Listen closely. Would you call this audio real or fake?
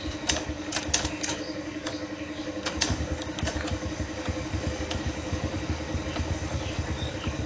fake